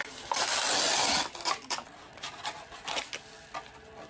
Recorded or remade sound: recorded